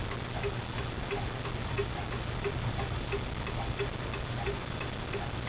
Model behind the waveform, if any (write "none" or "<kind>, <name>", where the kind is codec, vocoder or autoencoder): none